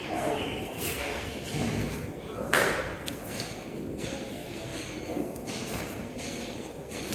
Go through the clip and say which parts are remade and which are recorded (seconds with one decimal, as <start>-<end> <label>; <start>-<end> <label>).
0.0-7.1 remade